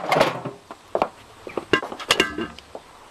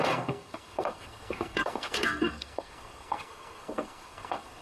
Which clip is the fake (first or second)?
second